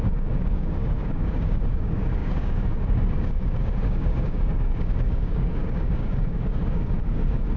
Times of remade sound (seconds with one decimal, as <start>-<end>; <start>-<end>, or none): 0.0-7.6